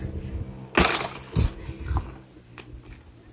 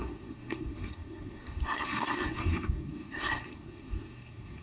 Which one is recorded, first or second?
first